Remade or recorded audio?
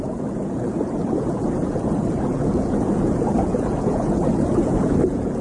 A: remade